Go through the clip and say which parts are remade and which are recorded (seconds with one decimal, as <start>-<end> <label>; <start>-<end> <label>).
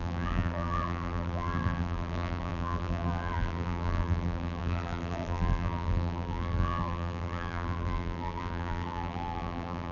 0.0-9.9 remade